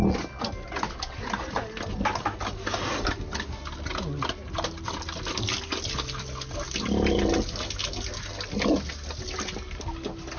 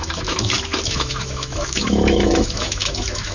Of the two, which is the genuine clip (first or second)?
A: first